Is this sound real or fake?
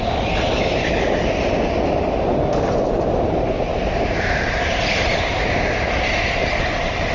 real